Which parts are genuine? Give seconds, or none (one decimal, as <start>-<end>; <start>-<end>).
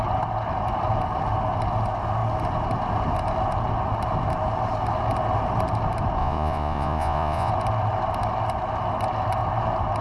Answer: 0.0-6.2; 7.5-10.0